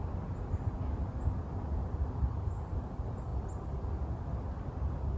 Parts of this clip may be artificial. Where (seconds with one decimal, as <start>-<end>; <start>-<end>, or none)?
none